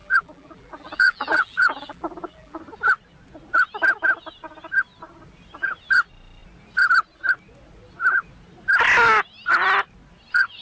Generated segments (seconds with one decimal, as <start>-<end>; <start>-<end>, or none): 0.0-2.6